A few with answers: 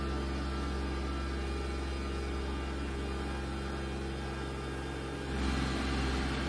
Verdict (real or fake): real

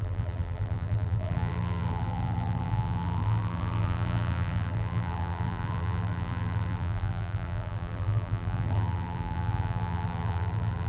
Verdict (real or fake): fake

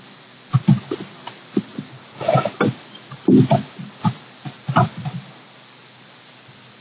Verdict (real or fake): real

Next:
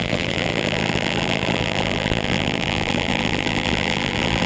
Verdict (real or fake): fake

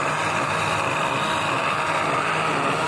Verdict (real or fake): real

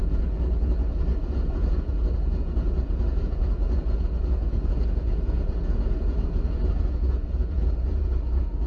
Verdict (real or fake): fake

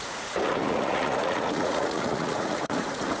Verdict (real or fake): fake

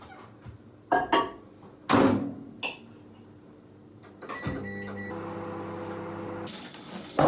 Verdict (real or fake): real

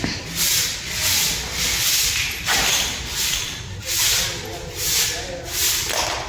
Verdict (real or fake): real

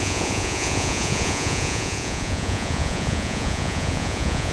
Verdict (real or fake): fake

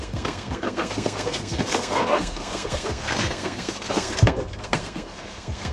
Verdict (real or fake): fake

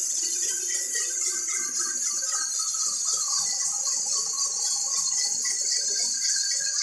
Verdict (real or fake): fake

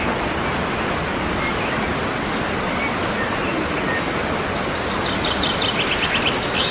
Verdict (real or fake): real